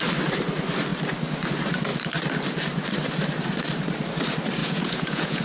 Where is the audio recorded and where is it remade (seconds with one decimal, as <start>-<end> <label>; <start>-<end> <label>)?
0.0-4.6 recorded; 4.6-5.4 remade